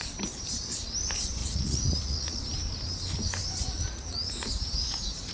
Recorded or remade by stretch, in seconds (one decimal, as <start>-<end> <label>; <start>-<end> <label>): 0.0-1.4 recorded; 1.4-2.4 remade; 2.4-3.4 recorded; 3.4-5.3 remade